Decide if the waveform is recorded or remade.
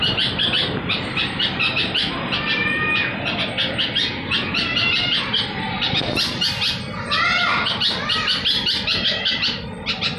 recorded